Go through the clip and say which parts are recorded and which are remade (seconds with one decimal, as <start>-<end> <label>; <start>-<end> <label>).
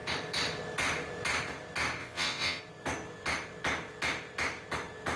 0.0-2.0 recorded; 2.0-2.6 remade; 2.6-5.2 recorded